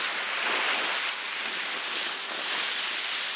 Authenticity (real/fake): real